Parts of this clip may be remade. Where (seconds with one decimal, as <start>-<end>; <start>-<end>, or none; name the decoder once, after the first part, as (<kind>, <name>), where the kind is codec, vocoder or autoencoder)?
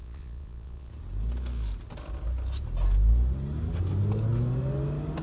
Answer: 0.0-0.9 (vocoder, Vocos)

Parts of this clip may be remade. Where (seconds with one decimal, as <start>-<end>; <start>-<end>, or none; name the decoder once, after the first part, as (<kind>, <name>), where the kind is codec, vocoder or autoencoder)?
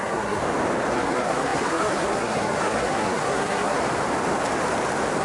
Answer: 0.0-0.4 (codec, SNAC); 0.9-3.8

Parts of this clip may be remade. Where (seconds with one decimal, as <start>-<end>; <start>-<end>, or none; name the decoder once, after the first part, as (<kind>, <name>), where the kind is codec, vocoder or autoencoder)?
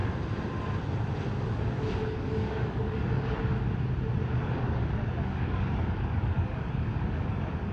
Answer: 1.4-3.4 (codec, DAC); 4.2-7.7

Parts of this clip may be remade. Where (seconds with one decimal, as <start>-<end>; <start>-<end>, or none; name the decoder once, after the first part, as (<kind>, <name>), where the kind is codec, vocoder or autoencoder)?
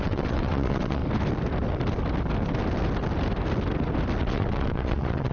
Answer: 0.0-1.0 (vocoder, WaveNeXt); 4.2-5.3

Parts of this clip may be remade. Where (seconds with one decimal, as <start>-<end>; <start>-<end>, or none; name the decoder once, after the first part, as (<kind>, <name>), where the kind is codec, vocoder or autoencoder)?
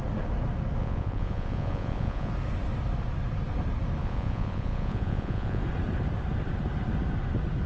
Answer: 0.8-2.3 (vocoder, Vocos); 4.0-5.6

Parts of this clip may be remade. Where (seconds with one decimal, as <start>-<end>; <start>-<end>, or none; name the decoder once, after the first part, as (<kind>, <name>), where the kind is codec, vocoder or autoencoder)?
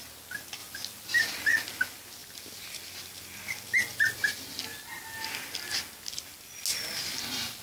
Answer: none